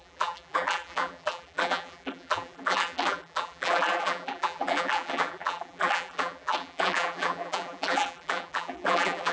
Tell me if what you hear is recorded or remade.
remade